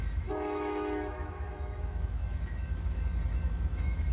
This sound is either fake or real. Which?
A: fake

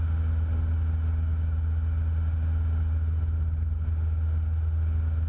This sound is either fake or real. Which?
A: real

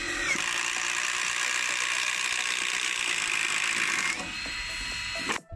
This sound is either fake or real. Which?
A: real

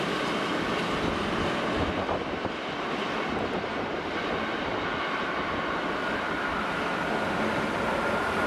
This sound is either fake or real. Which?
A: real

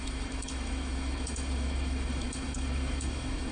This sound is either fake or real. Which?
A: fake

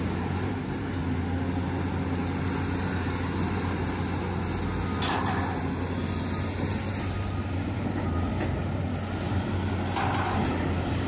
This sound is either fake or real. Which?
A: real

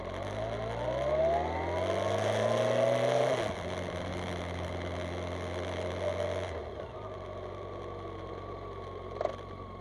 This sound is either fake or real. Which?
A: real